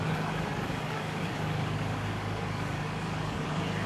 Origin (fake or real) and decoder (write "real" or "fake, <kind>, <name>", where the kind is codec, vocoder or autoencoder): fake, codec, DAC